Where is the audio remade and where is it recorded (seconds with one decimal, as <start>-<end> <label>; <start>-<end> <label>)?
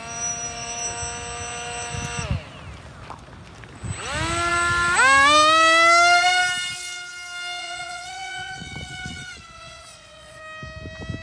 0.0-7.6 recorded; 7.6-10.4 remade; 10.4-11.2 recorded